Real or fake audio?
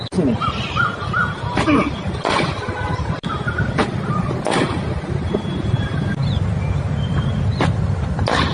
real